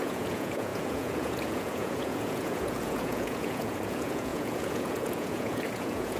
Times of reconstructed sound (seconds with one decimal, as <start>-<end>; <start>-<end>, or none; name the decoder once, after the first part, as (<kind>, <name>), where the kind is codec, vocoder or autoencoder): 0.0-6.2 (vocoder, Vocos)